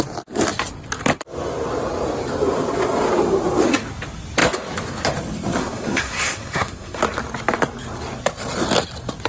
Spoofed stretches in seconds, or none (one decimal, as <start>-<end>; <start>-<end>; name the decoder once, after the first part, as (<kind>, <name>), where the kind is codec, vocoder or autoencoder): 5.6-7.0 (codec, SNAC)